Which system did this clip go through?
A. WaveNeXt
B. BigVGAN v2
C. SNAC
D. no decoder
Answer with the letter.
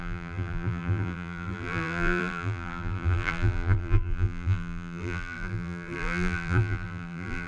B